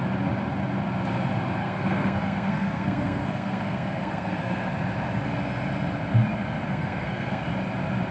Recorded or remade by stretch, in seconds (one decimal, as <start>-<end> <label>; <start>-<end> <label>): 0.0-1.6 recorded; 1.6-4.7 remade; 4.7-6.7 recorded; 6.7-7.4 remade; 7.4-8.1 recorded